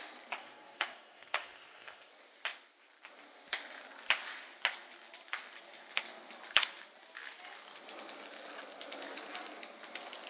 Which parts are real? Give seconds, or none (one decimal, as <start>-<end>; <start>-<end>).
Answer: 0.0-0.4; 2.1-10.3